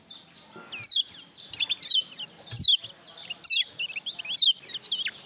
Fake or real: real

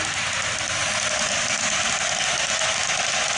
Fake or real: real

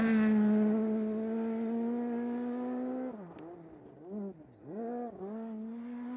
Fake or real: real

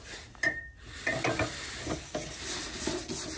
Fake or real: real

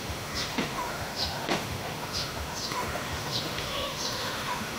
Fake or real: fake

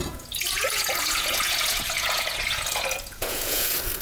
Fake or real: fake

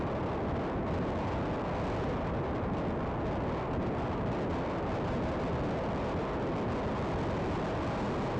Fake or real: real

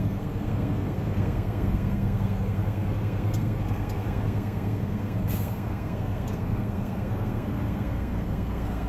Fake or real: fake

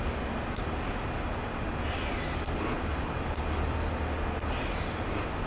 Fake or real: real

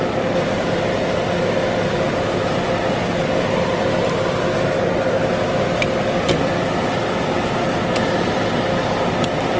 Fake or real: real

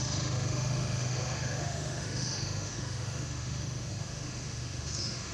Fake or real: fake